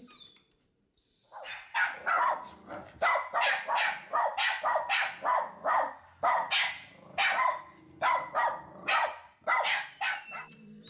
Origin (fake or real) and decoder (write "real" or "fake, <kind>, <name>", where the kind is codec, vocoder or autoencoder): real